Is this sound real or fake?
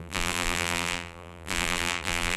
fake